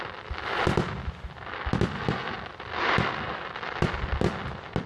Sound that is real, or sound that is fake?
real